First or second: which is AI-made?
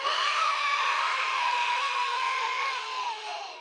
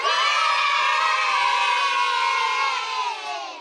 first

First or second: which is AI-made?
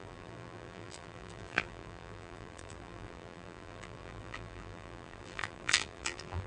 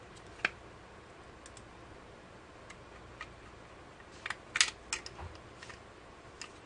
first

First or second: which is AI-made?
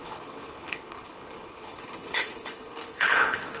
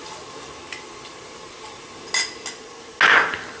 first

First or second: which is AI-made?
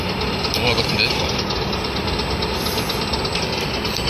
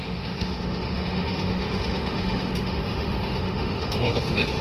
second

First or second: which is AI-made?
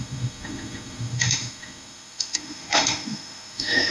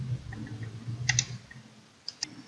first